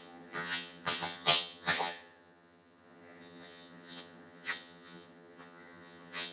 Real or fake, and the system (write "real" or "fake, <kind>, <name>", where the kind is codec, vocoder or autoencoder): fake, vocoder, HiFi-GAN